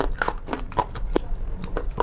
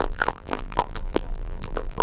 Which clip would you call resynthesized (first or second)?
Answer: second